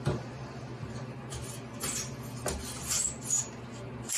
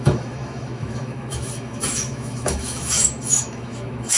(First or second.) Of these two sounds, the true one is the first